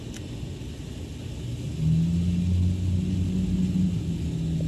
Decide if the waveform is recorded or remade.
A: recorded